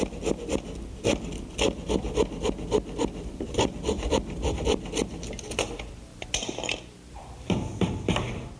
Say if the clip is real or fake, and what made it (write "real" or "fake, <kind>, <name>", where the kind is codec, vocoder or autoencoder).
real